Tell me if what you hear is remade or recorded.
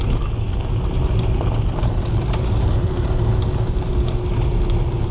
recorded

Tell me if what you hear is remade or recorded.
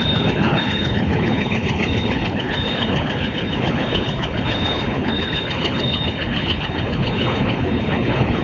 remade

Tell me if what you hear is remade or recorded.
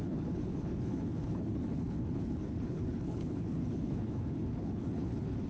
remade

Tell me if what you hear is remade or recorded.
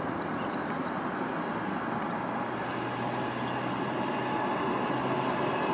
recorded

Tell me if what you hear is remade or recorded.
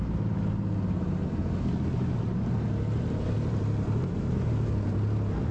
recorded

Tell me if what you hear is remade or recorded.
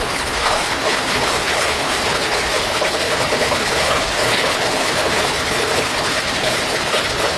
remade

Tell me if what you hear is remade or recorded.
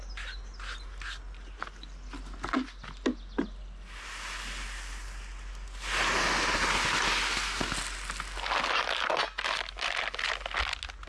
recorded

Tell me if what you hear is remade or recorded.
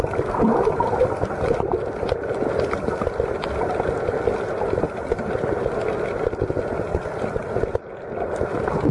recorded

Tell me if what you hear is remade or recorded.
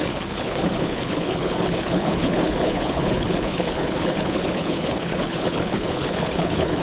remade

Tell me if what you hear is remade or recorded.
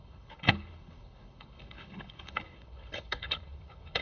remade